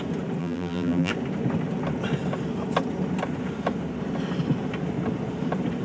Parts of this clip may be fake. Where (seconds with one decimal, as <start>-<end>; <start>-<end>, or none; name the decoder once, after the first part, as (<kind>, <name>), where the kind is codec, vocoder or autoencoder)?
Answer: 0.4-1.1 (vocoder, BigVGAN v2)